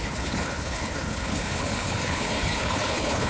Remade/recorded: remade